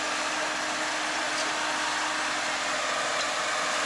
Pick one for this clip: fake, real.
real